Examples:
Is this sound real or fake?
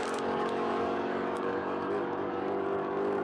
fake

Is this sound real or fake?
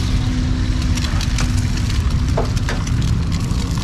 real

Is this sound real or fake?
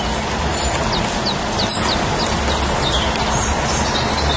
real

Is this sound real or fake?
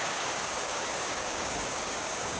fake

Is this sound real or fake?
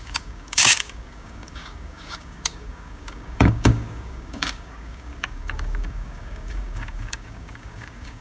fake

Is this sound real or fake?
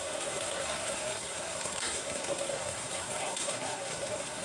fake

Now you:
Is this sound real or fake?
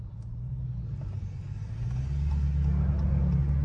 real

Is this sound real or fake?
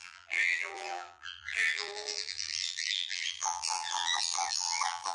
fake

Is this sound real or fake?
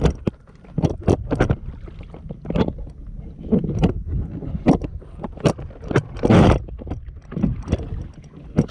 real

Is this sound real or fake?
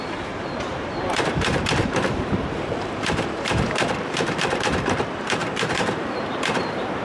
fake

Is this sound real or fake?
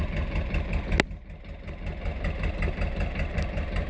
real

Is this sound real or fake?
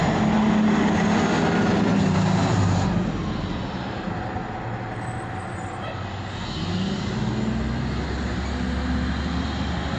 real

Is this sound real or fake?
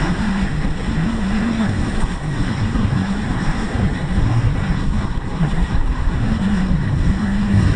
fake